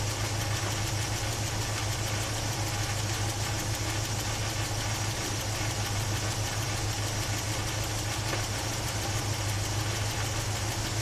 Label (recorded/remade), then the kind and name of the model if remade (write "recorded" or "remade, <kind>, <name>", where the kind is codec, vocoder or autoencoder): recorded